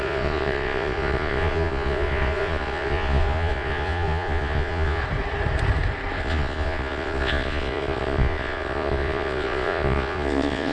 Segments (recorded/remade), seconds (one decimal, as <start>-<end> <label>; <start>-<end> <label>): 0.0-5.0 remade; 5.0-6.2 recorded; 6.2-10.7 remade